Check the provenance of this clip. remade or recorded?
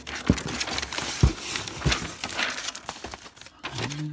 recorded